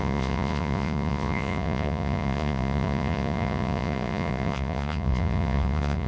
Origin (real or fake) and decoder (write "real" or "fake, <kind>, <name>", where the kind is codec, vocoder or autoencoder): fake, vocoder, Vocos